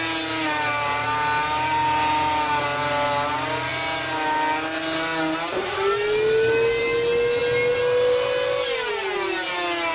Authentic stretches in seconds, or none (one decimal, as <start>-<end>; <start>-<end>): 0.0-9.9